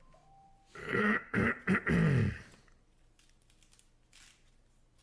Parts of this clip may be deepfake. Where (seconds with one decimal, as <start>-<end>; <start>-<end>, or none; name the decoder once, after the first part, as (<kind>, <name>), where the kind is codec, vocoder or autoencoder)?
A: 0.8-1.5 (codec, SNAC)